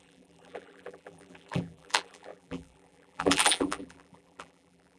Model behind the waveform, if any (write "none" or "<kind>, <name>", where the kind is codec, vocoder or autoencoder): vocoder, BigVGAN v2